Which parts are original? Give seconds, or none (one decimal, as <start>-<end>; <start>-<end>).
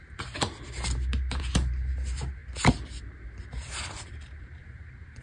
2.4-3.0